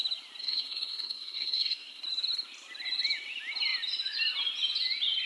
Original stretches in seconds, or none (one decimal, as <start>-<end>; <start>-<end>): 0.0-0.4; 2.0-5.3